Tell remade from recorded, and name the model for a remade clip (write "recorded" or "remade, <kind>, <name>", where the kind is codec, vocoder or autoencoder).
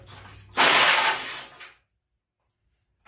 recorded